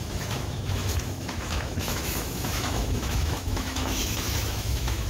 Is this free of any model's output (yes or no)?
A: no